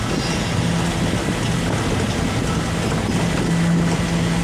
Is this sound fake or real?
real